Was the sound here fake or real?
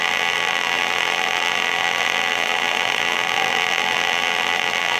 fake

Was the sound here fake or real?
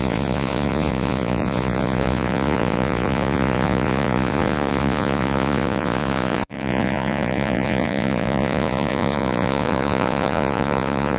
fake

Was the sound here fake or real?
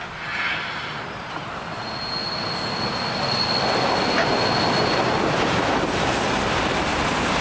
real